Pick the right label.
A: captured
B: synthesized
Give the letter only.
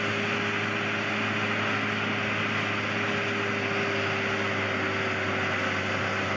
A